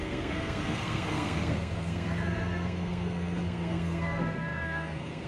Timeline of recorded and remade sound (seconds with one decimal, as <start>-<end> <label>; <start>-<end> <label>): 0.0-5.3 remade